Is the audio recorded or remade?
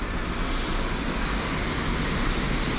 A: recorded